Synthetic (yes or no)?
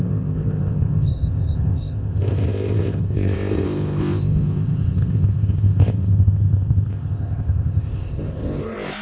yes